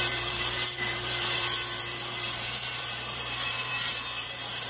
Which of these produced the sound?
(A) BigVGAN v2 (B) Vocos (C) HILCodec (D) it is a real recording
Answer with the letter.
A